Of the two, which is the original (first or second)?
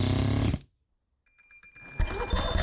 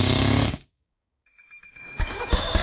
first